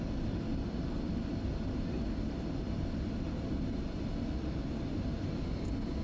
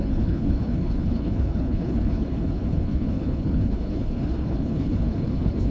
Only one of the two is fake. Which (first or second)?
second